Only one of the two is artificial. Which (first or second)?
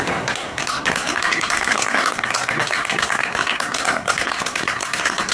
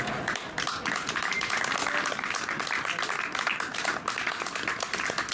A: first